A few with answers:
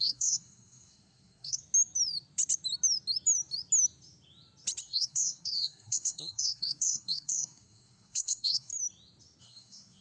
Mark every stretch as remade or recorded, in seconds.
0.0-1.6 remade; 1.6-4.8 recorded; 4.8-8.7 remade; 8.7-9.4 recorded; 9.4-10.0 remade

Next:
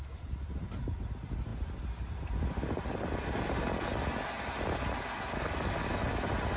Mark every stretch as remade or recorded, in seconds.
0.0-6.6 recorded

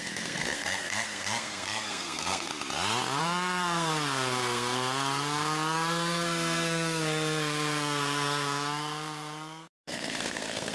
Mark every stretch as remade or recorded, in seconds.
0.0-2.5 remade; 2.5-3.2 recorded; 3.2-10.7 remade

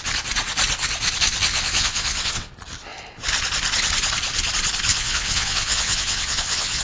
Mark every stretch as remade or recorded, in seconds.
0.0-1.5 recorded; 1.5-2.5 remade; 2.5-4.9 recorded; 4.9-6.8 remade

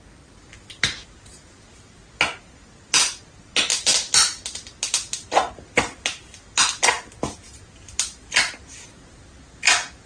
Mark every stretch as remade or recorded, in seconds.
0.0-10.1 recorded

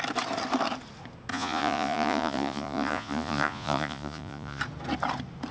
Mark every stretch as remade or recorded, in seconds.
0.0-1.3 recorded; 1.3-4.6 remade; 4.6-5.5 recorded

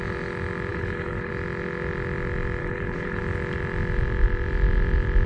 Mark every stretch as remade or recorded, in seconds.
0.0-0.7 recorded; 0.7-1.3 remade; 1.3-2.6 recorded; 2.6-3.2 remade; 3.2-5.3 recorded

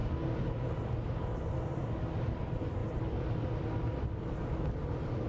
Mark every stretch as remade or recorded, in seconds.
0.0-5.3 recorded